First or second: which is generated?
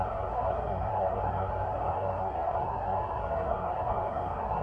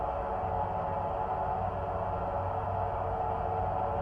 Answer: first